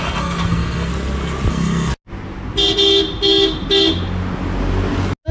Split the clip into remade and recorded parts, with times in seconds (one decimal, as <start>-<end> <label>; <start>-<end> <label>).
0.0-0.9 remade; 0.9-1.5 recorded; 1.5-1.9 remade; 1.9-5.3 recorded